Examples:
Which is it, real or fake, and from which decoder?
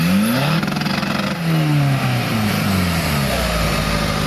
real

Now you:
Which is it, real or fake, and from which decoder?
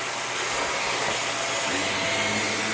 real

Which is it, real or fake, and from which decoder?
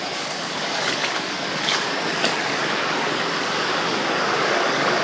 fake, codec, DAC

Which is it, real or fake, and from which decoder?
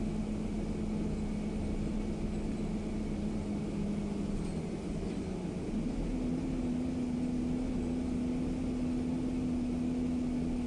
real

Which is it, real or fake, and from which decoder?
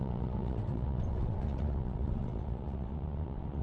fake, vocoder, WaveNeXt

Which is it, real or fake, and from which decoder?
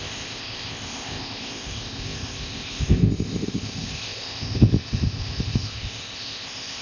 fake, codec, ZipCodec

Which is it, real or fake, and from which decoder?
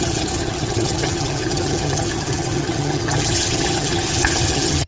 fake, vocoder, HiFi-GAN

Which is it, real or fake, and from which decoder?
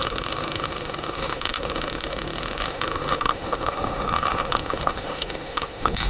fake, autoencoder, DAC-VAE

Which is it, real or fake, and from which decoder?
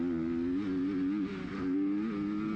real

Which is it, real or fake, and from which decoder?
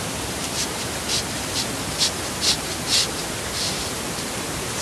real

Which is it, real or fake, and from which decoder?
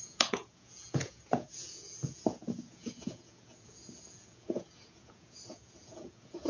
fake, vocoder, Vocos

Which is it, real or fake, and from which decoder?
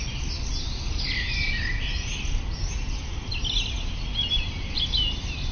real